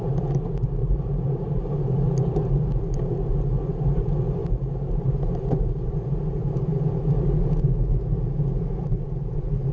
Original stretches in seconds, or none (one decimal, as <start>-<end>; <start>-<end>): 0.0-0.8; 2.0-4.4; 5.7-6.4; 8.4-8.8